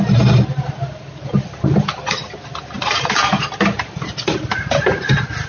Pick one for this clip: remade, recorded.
recorded